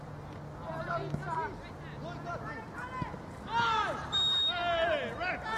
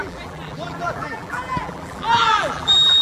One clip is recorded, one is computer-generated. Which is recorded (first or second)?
first